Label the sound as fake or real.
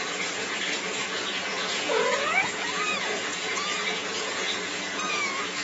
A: fake